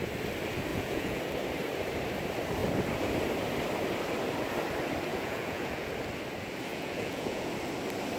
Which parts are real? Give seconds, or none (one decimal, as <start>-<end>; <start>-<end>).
0.0-0.7; 1.2-5.1; 5.9-6.7; 7.5-8.2